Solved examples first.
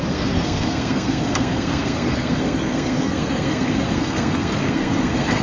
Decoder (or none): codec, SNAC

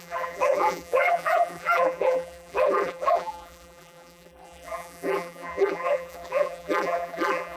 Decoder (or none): vocoder, BigVGAN v2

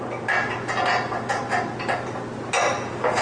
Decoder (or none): none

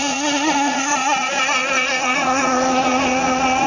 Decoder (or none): vocoder, Vocos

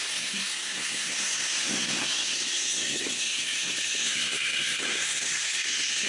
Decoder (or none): codec, SNAC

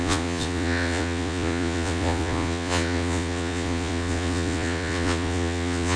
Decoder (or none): vocoder, Vocos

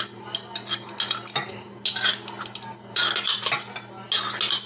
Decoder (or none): none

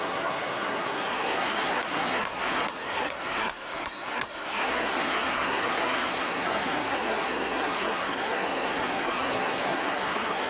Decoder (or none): codec, SNAC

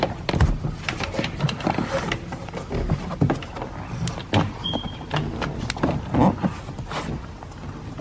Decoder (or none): none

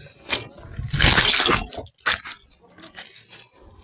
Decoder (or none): none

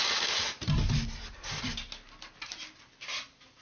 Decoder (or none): none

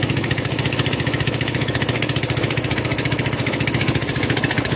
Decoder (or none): autoencoder, DAC-VAE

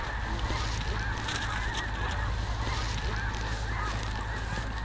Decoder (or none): none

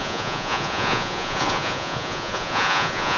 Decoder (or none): vocoder, Vocos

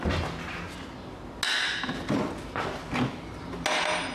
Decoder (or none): none